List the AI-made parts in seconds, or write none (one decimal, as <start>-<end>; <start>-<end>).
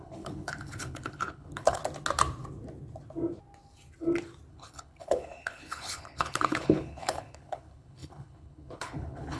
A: 0.0-1.8; 4.5-9.4